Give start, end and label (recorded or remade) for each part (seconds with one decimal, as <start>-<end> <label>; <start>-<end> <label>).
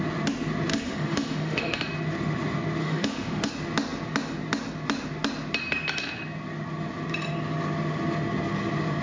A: 0.0-0.7 recorded; 0.7-1.8 remade; 1.8-2.8 recorded; 2.8-3.5 remade; 3.5-9.0 recorded